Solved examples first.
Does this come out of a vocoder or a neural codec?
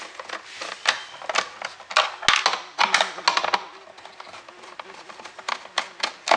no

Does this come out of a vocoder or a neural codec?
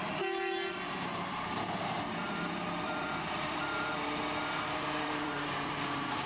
yes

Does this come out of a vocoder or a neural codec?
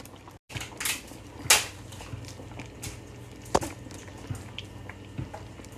no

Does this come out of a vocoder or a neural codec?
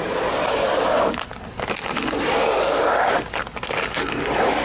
no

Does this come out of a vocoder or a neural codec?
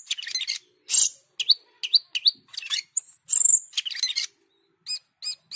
no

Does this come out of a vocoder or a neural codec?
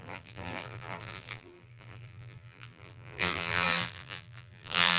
yes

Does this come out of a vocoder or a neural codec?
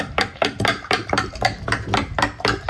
yes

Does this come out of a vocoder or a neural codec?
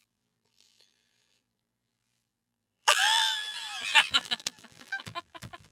yes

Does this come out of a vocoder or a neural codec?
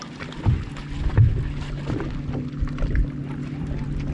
no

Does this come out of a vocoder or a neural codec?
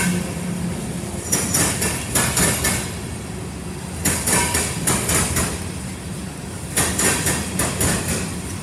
no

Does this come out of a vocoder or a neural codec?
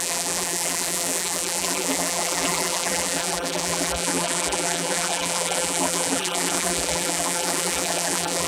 yes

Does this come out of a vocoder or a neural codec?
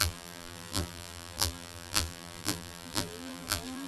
yes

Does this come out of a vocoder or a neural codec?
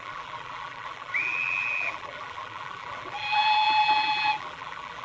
yes